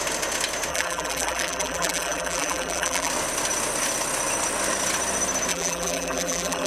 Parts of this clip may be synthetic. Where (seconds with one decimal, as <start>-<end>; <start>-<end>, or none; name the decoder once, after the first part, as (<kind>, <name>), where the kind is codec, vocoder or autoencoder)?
0.7-3.1 (vocoder, BigVGAN v2); 5.5-6.7